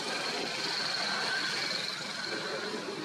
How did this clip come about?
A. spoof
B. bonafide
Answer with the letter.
B